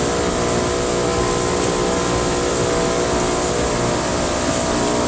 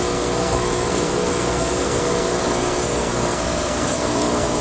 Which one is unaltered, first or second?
first